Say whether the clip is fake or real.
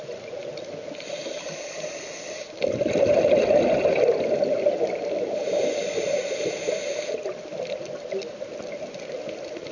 real